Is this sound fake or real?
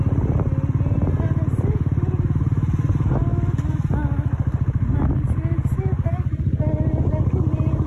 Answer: real